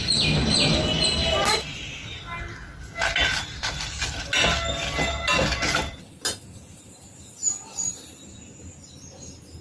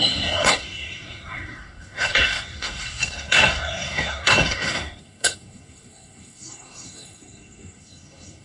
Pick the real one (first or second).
first